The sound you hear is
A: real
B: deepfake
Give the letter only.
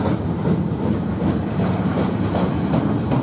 A